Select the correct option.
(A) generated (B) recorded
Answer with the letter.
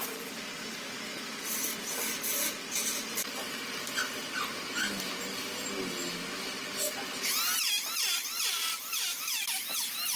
B